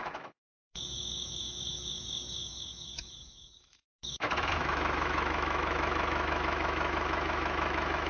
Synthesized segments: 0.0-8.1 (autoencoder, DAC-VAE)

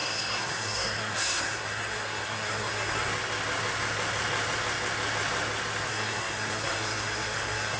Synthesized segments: 0.0-3.1 (codec, SNAC); 5.9-7.8

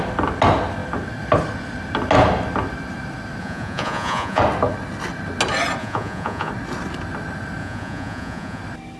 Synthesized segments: 3.4-4.4 (vocoder, Vocos); 5.8-6.5; 7.6-8.6

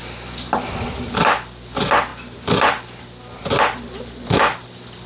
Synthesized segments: none

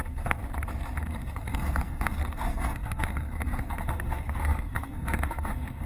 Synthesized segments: 0.0-0.4 (codec, SNAC); 1.0-5.9

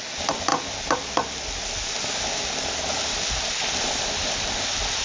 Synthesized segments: none

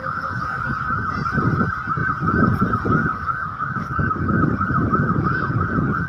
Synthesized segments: 0.0-0.9 (codec, DAC); 3.0-4.4

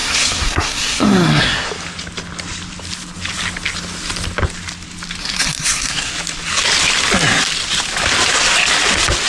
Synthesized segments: 0.0-1.7 (codec, SNAC); 5.2-6.1